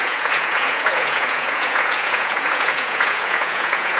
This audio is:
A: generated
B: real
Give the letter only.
A